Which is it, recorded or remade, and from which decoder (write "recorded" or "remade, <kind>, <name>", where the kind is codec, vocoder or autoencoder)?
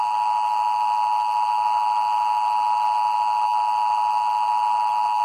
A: recorded